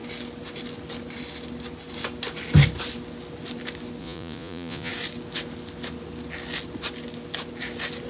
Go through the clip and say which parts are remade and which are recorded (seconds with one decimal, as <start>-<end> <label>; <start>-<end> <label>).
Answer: 0.0-4.0 recorded; 4.0-4.9 remade; 4.9-8.1 recorded